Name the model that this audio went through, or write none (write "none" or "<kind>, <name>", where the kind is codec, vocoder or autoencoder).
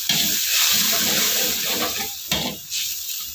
vocoder, BigVGAN v2